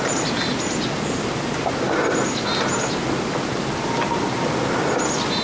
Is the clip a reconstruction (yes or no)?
no